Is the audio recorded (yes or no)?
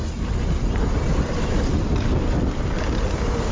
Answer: yes